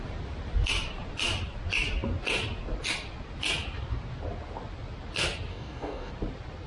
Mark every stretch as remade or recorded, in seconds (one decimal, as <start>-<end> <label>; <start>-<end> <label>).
0.0-5.5 recorded; 5.5-6.1 remade; 6.1-6.7 recorded